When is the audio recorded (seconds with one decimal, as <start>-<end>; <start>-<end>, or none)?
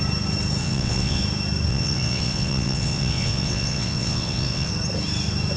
0.0-0.6; 1.2-1.7; 4.7-5.6